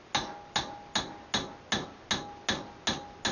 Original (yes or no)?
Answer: yes